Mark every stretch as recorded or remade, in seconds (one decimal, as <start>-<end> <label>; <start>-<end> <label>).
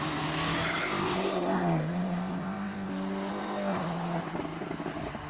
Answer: 0.0-0.8 recorded; 0.8-2.9 remade; 2.9-3.3 recorded; 3.3-3.8 remade; 3.8-5.3 recorded